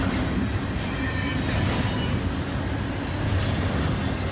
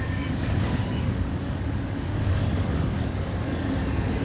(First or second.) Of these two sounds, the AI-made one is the second